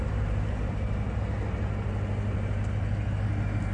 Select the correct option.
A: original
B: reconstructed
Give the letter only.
A